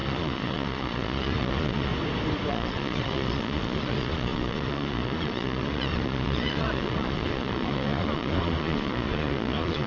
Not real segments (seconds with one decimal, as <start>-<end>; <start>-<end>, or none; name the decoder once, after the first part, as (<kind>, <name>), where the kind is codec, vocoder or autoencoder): 0.0-1.9 (vocoder, Vocos); 2.5-9.9